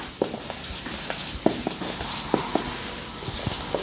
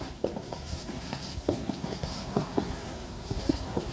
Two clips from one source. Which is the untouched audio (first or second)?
first